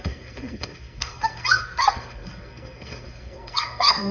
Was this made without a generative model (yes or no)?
no